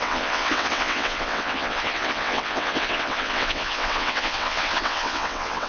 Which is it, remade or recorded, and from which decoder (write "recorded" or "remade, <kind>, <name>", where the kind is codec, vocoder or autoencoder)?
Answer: remade, vocoder, WaveNeXt